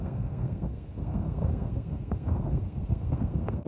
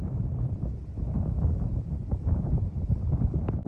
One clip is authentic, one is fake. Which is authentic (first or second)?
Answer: second